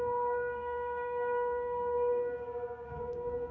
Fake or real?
fake